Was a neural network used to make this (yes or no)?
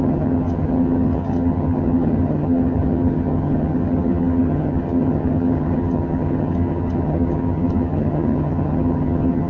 yes